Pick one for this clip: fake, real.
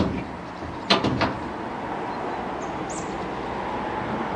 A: real